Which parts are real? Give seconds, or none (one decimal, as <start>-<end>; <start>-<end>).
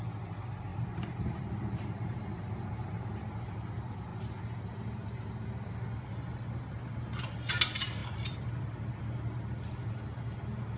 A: 0.0-0.7; 1.4-8.0; 9.9-10.8